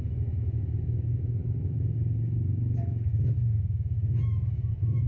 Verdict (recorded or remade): remade